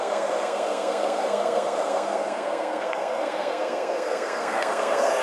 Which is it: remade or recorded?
remade